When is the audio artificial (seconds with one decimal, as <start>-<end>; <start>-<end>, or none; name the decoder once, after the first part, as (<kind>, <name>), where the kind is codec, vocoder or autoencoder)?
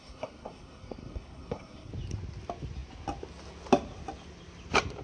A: 0.0-1.9 (codec, SNAC)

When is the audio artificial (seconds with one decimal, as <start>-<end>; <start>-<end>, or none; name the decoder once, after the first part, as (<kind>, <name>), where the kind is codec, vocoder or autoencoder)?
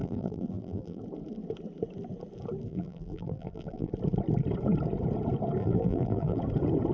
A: 0.0-1.0 (vocoder, BigVGAN v2); 2.7-3.9; 5.6-6.4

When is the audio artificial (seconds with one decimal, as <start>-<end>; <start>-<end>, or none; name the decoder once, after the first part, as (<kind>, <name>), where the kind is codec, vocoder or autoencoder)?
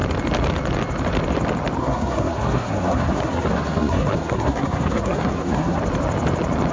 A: 1.8-5.8 (codec, SNAC)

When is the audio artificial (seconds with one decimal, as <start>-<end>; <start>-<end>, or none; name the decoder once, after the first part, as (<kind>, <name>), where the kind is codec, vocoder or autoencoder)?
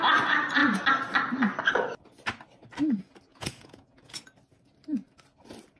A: 3.3-4.2 (vocoder, Vocos)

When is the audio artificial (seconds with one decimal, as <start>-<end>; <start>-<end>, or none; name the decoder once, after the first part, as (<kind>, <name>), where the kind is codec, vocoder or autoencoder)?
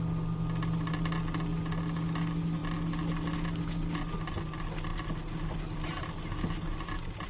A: none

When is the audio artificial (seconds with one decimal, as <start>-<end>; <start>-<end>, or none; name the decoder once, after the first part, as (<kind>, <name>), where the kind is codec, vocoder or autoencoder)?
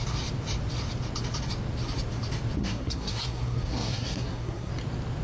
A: 2.6-4.7 (codec, SNAC)